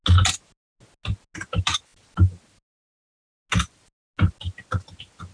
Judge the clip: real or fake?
real